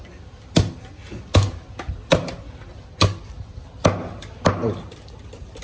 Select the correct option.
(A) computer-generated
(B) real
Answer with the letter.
B